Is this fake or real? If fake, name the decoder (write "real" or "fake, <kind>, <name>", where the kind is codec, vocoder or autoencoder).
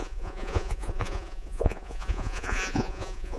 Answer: fake, vocoder, Vocos